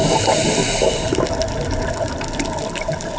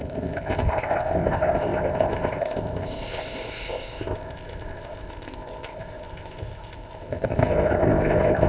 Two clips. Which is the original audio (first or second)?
first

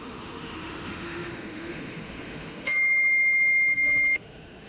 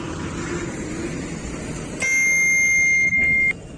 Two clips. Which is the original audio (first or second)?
second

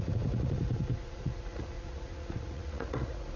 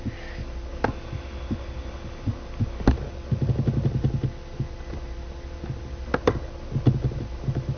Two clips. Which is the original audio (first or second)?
second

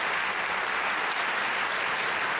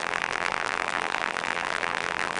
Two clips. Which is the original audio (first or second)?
first